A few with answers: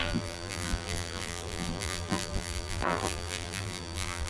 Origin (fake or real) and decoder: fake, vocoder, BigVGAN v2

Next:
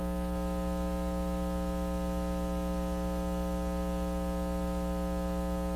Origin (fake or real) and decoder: real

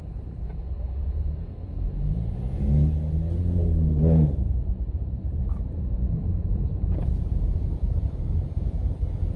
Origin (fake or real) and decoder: fake, vocoder, Vocos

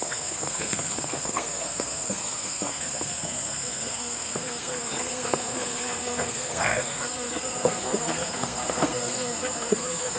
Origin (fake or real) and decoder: fake, codec, SNAC